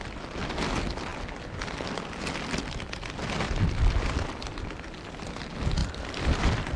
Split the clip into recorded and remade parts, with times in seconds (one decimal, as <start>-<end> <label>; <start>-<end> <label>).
0.0-5.8 recorded; 5.8-6.8 remade